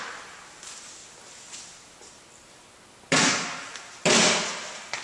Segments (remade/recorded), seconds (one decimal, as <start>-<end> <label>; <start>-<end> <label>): 0.0-5.0 recorded